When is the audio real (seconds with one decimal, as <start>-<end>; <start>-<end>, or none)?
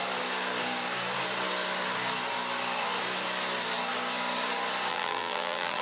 0.0-4.9